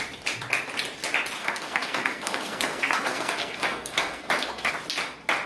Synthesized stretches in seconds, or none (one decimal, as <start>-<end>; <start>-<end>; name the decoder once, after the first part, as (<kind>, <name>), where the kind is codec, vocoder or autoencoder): 1.4-4.7 (codec, SNAC)